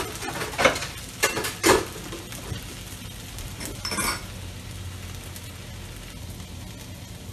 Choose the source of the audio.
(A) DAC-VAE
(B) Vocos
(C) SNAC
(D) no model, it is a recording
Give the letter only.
D